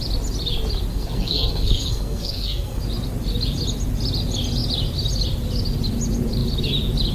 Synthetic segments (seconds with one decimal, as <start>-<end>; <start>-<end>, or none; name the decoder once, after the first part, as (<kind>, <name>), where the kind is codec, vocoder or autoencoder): 0.9-2.8 (codec, SNAC)